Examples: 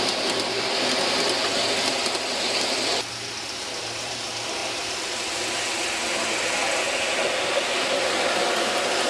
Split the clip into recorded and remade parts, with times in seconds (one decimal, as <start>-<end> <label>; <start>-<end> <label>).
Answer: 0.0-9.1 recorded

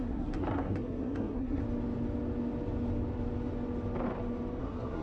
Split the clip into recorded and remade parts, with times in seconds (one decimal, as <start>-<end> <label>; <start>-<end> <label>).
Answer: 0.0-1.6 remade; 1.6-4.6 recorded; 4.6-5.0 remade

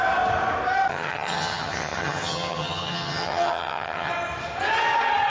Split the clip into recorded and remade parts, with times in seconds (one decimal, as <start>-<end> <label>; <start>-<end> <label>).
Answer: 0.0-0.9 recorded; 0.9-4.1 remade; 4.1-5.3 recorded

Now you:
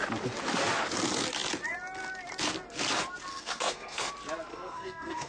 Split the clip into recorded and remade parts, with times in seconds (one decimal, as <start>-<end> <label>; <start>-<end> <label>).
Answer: 0.0-3.3 recorded; 3.3-4.1 remade; 4.1-4.5 recorded; 4.5-5.3 remade

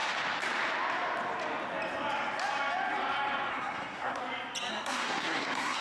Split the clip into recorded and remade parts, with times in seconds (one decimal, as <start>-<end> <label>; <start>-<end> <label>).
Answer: 0.0-3.5 recorded; 3.5-4.2 remade; 4.2-4.7 recorded; 4.7-5.8 remade